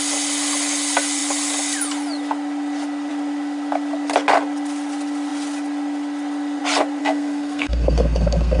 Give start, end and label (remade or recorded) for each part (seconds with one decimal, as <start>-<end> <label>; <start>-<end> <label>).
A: 0.0-7.0 recorded; 7.0-8.6 remade